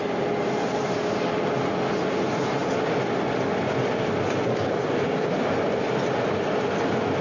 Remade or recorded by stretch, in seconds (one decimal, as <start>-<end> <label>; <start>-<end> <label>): 0.0-7.2 recorded